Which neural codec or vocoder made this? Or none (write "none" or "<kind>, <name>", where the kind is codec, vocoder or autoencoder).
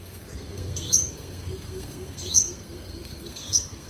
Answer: codec, SNAC